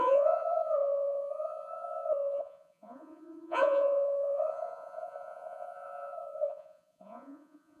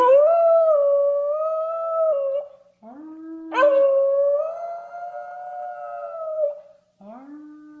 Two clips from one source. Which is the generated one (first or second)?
first